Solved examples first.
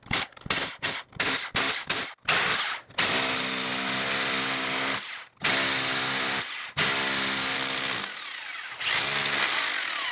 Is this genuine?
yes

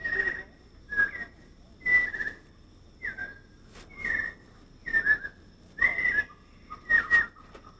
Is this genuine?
yes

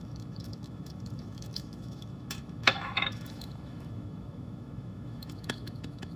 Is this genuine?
no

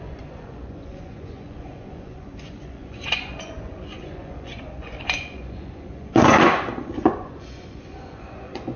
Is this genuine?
no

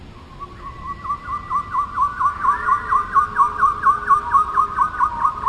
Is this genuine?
yes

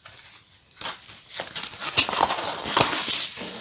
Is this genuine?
yes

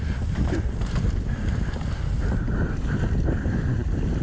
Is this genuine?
yes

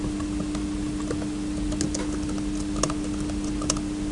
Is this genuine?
yes